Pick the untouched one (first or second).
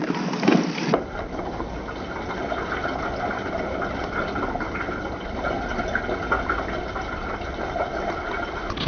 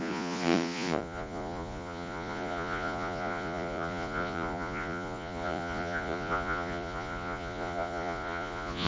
first